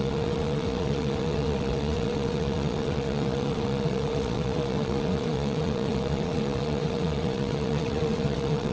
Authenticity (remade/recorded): remade